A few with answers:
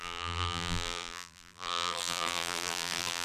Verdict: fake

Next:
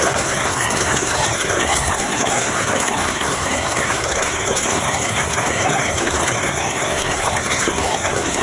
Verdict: fake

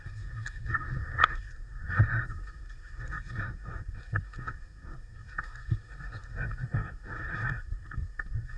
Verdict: fake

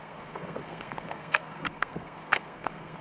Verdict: fake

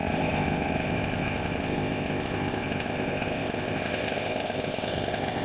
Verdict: fake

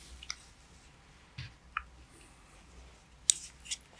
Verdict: real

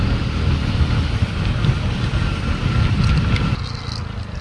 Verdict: real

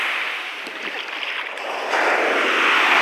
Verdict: fake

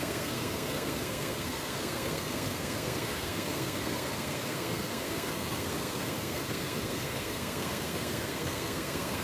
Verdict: fake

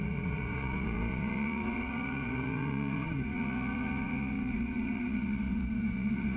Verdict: fake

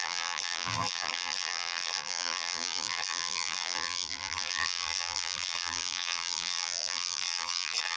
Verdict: fake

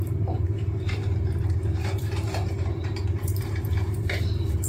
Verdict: fake